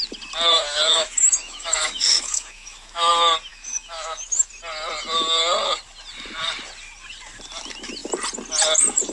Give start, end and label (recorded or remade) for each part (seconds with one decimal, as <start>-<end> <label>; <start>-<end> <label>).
0.0-0.5 recorded; 0.5-3.1 remade; 3.1-3.5 recorded; 3.5-4.5 remade; 4.5-9.1 recorded